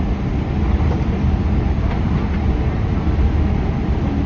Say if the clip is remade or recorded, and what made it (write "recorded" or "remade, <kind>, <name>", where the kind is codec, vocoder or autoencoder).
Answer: recorded